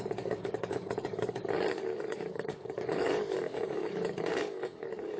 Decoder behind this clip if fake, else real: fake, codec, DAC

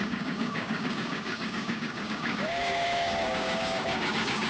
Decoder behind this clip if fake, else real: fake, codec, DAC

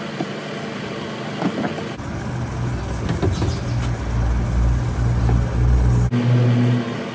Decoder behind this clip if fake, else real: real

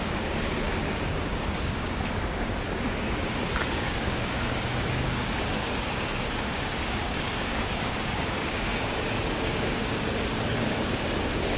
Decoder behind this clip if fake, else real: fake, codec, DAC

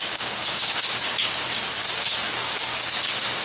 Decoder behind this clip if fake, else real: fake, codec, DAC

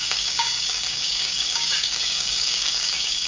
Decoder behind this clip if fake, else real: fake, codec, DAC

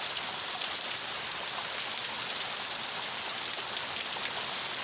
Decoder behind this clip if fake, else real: real